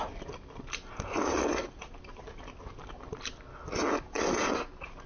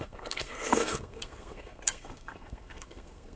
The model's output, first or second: second